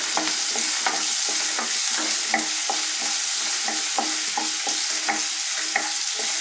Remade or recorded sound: recorded